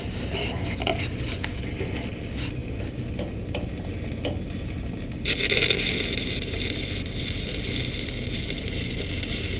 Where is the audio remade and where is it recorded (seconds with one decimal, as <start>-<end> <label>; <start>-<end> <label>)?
0.0-9.6 recorded